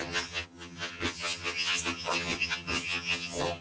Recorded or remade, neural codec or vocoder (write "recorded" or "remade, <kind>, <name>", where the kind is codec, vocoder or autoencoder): remade, vocoder, HiFi-GAN